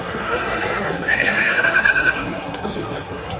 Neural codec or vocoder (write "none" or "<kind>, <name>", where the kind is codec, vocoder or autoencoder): codec, SNAC